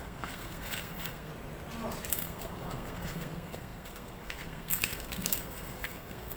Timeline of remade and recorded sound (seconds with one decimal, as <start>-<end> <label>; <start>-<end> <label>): 0.0-1.3 remade; 1.3-2.1 recorded; 2.1-6.4 remade